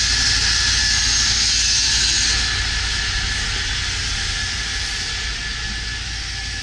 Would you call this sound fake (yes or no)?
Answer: no